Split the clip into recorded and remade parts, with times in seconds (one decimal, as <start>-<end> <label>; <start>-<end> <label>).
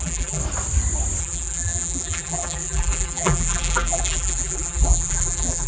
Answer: 0.0-0.4 remade; 0.4-1.2 recorded; 1.2-5.7 remade